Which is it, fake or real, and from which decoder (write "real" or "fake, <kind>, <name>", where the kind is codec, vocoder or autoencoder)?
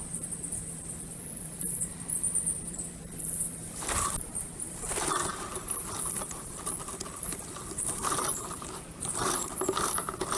fake, vocoder, BigVGAN v2